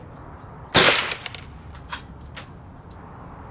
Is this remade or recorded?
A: recorded